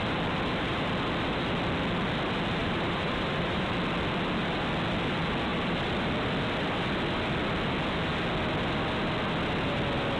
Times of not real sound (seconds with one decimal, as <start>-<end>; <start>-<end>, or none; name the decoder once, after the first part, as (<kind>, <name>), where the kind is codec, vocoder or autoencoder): 2.6-3.7 (vocoder, BigVGAN v2)